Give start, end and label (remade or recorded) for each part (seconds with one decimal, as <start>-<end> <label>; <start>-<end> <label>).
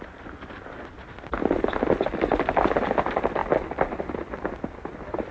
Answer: 0.0-5.3 recorded